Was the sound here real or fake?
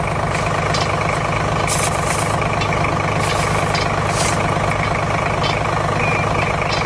real